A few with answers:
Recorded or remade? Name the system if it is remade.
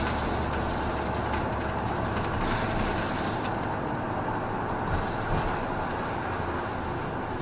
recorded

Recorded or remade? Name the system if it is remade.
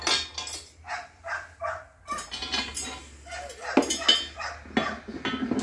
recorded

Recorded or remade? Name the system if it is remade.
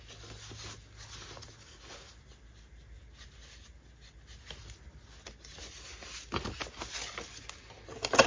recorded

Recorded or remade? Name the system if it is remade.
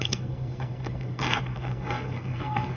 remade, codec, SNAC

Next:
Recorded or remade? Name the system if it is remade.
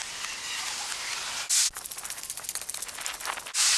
recorded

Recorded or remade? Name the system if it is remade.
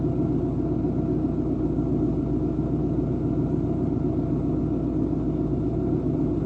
recorded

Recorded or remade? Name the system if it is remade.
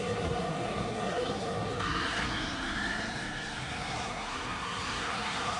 remade, codec, SNAC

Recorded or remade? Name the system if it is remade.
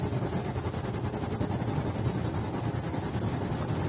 recorded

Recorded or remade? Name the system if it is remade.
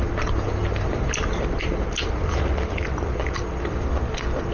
recorded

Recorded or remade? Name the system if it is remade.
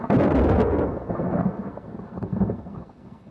remade, codec, SNAC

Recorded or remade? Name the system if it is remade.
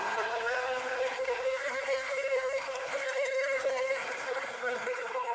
remade, codec, SNAC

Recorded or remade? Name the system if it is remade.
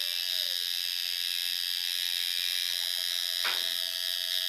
recorded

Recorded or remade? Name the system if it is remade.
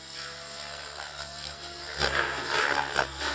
remade, codec, SNAC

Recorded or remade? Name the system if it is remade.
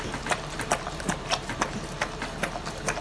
recorded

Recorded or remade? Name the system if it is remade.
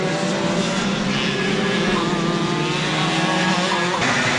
recorded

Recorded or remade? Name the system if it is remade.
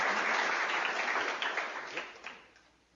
recorded